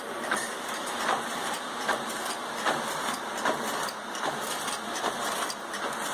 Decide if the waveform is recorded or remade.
remade